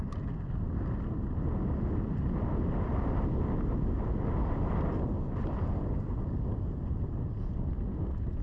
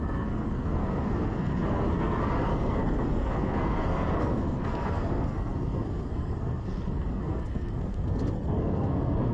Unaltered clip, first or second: first